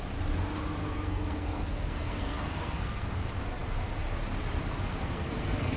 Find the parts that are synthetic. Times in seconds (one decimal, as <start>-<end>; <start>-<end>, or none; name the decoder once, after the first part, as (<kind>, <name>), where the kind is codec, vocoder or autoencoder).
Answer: 0.8-3.1 (codec, SNAC); 4.9-5.8